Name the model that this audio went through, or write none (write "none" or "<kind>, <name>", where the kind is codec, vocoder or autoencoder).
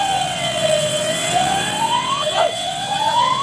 vocoder, WaveNeXt